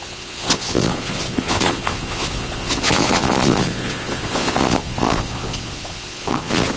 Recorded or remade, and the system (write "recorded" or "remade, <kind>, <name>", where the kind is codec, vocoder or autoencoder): remade, vocoder, Vocos